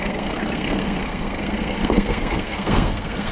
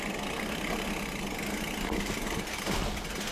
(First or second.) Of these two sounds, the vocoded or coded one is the first